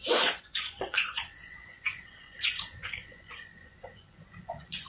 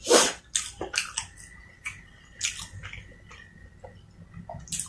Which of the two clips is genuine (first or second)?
second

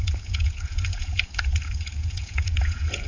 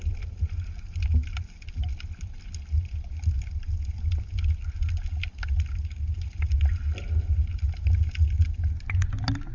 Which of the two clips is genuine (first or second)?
second